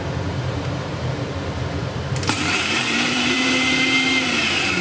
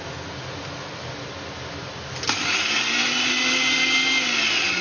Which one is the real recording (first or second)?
second